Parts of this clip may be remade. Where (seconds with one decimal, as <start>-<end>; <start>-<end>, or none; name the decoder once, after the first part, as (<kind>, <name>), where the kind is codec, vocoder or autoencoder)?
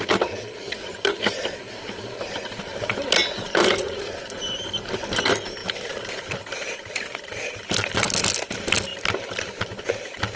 0.6-1.6 (vocoder, BigVGAN v2); 5.6-7.5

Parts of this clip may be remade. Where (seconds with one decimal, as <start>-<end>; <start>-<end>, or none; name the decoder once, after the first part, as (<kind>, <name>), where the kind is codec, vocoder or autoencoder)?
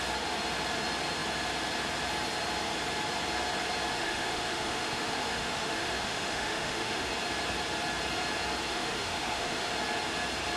3.9-7.1 (autoencoder, DAC-VAE); 8.7-9.7